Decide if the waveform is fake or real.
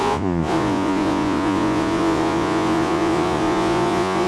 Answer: fake